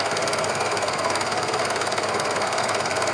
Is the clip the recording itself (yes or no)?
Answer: no